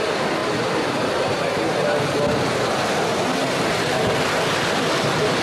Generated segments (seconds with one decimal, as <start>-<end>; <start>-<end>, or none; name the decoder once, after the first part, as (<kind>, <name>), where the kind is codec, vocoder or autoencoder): 0.4-1.4 (vocoder, BigVGAN v2)